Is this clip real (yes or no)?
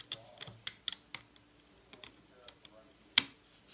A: yes